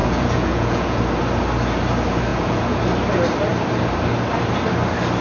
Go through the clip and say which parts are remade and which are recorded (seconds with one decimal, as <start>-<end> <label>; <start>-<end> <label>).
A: 0.0-1.0 remade; 1.0-2.3 recorded; 2.3-2.8 remade; 2.8-5.2 recorded